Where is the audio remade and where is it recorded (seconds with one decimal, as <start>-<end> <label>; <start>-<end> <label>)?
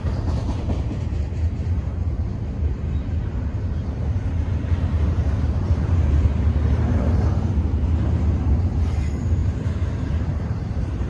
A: 0.0-6.3 remade; 6.3-8.1 recorded; 8.1-11.1 remade